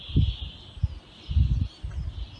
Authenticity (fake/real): real